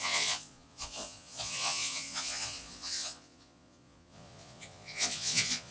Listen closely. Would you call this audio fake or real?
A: fake